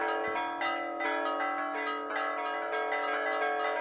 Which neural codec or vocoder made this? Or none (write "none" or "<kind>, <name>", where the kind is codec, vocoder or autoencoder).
none